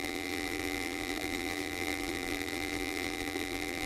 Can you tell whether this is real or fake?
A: fake